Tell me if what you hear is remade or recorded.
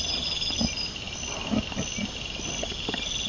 recorded